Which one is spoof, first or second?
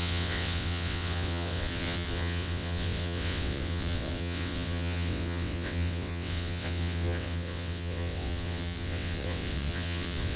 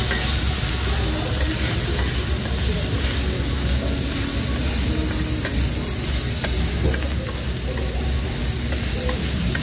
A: first